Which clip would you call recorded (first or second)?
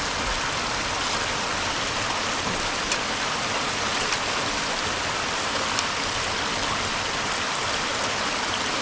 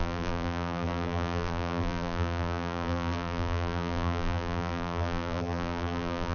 first